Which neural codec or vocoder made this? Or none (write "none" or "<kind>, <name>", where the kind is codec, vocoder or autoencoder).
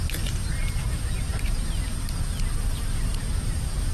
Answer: none